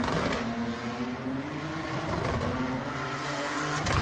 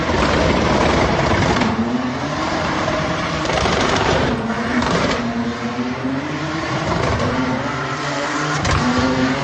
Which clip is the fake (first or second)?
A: second